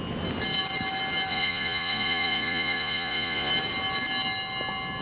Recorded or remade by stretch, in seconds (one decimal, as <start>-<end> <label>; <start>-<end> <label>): 0.0-1.3 recorded; 1.3-3.5 remade; 3.5-5.0 recorded